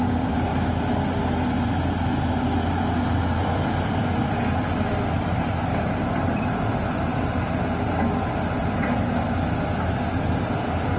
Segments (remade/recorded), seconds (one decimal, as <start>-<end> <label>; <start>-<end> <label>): 0.0-0.5 remade; 0.5-4.3 recorded; 4.3-7.6 remade; 7.6-8.6 recorded; 8.6-11.0 remade